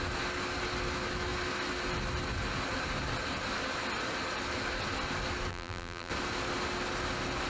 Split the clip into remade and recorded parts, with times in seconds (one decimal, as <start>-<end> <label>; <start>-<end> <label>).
0.0-5.5 recorded; 5.5-6.1 remade; 6.1-7.5 recorded